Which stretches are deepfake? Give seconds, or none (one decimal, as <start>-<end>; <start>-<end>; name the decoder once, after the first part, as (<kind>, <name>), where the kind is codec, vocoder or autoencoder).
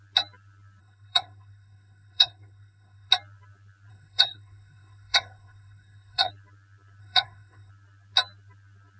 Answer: 0.8-3.1 (codec, SNAC); 3.9-6.3; 7.0-7.7